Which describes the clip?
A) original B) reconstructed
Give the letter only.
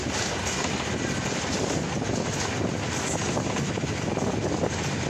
A